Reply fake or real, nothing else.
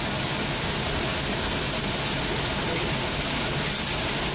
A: real